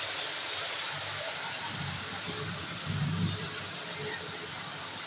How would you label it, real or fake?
real